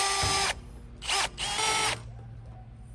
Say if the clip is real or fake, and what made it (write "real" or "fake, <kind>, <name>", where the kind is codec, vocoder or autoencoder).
real